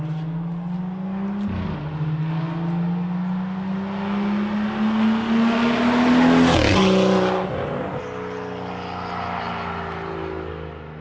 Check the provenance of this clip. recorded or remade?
recorded